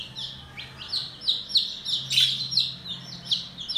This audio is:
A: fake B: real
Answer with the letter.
B